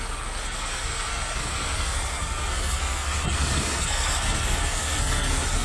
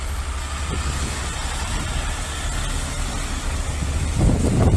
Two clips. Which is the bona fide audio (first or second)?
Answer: second